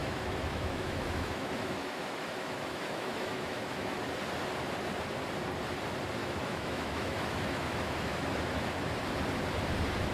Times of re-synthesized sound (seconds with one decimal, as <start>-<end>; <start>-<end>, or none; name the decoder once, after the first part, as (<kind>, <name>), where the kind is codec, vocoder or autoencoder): 0.0-4.0 (autoencoder, DAC-VAE); 6.2-8.9